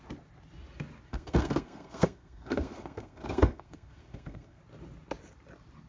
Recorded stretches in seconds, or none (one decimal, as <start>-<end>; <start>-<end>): 0.0-1.1; 4.6-5.9